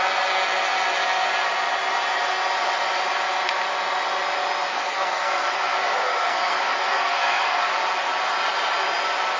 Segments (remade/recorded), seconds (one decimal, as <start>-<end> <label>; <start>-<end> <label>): 0.0-4.7 recorded; 4.7-7.6 remade; 7.6-9.4 recorded